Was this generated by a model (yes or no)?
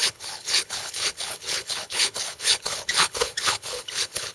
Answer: yes